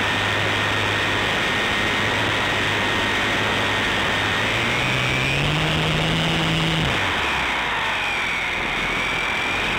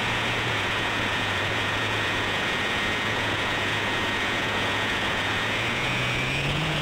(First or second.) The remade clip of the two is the second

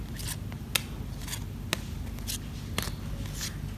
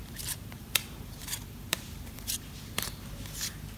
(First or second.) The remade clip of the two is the second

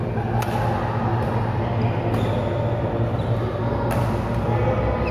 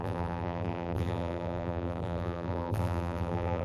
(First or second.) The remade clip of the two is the second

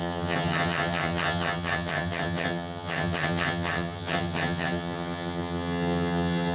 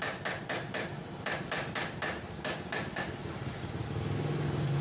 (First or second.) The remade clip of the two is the first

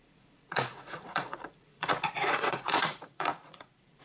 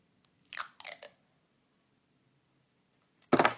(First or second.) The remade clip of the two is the first